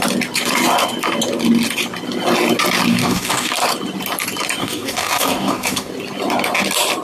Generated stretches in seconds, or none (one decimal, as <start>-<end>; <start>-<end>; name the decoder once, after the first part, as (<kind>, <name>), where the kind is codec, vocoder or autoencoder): 2.9-3.5 (codec, DAC); 4.6-5.9